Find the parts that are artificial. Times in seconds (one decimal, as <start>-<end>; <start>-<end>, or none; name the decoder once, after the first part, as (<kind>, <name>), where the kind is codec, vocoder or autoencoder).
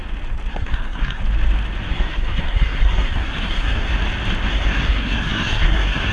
0.5-1.2 (codec, SNAC); 1.9-3.9; 4.5-6.1